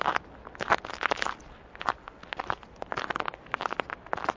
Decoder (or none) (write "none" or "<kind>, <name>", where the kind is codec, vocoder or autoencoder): none